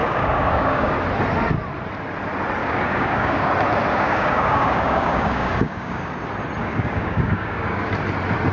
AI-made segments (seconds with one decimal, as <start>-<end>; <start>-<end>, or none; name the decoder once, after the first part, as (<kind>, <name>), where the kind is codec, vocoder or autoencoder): 0.0-0.9 (codec, DAC); 2.6-3.5; 3.9-6.1; 6.6-7.9